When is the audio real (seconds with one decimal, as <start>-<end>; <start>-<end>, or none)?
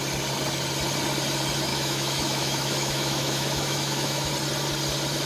0.0-1.7; 4.3-5.3